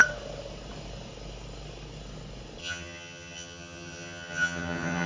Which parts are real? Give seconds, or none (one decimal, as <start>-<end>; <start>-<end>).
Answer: 0.0-2.6